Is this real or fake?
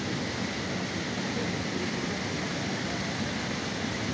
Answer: real